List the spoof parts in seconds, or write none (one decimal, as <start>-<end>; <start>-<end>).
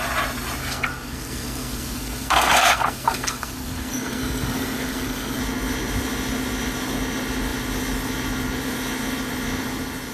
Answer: 0.6-5.4